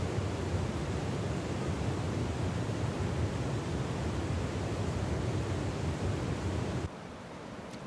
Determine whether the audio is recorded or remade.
remade